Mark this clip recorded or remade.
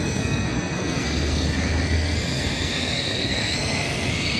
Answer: remade